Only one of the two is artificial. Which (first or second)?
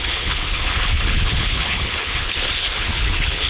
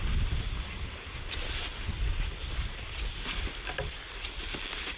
first